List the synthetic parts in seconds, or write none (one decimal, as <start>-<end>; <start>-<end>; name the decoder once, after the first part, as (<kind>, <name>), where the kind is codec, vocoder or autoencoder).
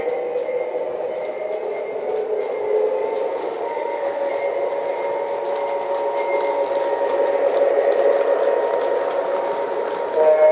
3.4-4.3 (autoencoder, DAC-VAE)